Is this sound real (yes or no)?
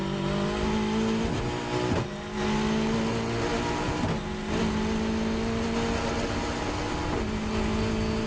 yes